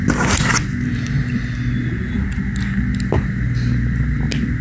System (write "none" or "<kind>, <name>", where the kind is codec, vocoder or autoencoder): none